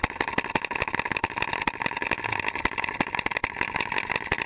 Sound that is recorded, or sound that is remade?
recorded